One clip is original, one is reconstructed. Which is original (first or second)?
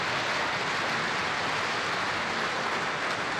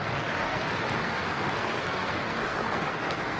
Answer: first